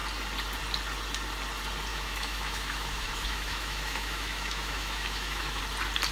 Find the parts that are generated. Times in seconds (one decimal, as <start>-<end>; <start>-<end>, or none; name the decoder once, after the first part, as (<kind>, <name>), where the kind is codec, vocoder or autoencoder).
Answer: 1.9-5.6 (autoencoder, DAC-VAE)